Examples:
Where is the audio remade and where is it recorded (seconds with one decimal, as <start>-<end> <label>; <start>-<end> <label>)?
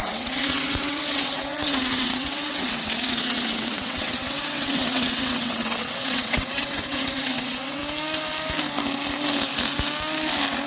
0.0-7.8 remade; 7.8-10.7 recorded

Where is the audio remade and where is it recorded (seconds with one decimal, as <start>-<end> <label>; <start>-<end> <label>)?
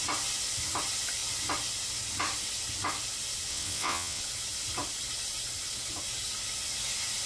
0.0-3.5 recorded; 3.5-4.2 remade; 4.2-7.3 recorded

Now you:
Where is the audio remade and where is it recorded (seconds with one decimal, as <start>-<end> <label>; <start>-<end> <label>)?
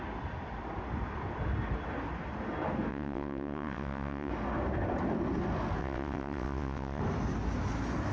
0.0-2.9 recorded; 2.9-4.3 remade; 4.3-5.8 recorded; 5.8-7.0 remade; 7.0-8.1 recorded